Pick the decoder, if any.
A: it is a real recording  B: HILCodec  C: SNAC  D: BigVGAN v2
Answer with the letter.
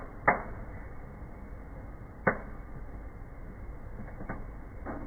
A